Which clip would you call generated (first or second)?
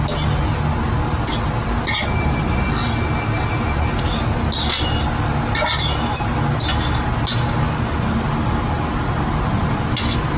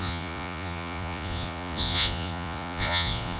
second